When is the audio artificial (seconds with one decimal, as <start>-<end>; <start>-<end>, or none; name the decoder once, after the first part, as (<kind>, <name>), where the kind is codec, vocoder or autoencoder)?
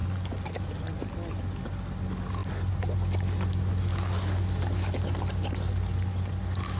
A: none